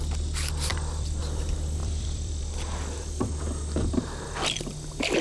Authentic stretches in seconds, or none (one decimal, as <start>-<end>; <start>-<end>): 0.0-0.7; 1.2-1.8; 2.4-5.2